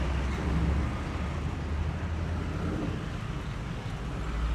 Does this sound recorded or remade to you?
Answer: recorded